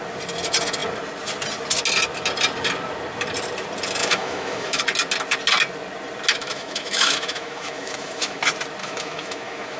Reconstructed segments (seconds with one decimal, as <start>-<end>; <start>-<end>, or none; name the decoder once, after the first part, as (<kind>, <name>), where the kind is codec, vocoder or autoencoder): 4.0-4.8 (autoencoder, DAC-VAE); 6.4-8.4; 8.8-9.8